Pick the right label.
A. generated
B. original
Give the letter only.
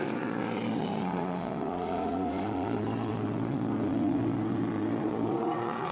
A